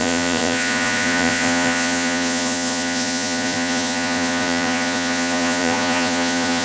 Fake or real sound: fake